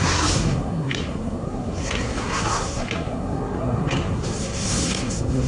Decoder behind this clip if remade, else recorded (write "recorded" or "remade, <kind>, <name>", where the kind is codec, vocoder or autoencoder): remade, codec, SNAC